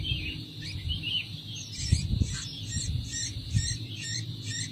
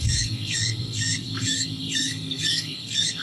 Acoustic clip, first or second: first